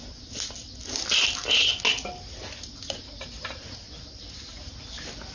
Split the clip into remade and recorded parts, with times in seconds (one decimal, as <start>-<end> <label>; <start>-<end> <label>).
0.0-5.3 recorded